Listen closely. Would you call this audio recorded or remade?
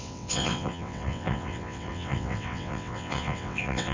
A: remade